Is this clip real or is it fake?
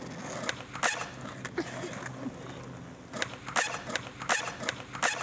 real